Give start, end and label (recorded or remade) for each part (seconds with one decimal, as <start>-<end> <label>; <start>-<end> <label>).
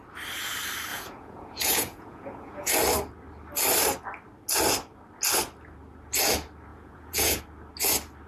0.0-0.9 recorded; 0.9-2.7 remade; 2.7-6.7 recorded; 6.7-7.4 remade; 7.4-8.3 recorded